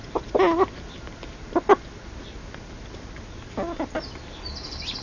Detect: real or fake real